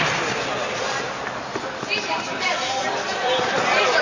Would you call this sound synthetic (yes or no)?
yes